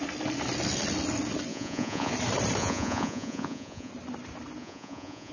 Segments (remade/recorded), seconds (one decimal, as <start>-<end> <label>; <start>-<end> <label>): 0.0-1.5 recorded; 1.5-2.1 remade; 2.1-2.6 recorded; 2.6-3.9 remade; 3.9-4.6 recorded; 4.6-5.3 remade